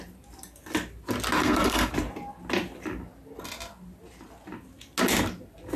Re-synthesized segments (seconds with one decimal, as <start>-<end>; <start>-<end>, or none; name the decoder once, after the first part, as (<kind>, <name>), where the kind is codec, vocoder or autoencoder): 1.4-1.9 (codec, SNAC)